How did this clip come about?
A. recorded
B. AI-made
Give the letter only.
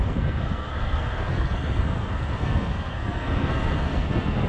B